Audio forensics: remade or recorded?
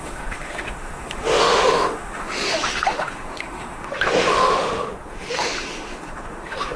remade